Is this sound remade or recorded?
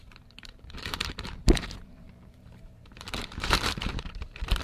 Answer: remade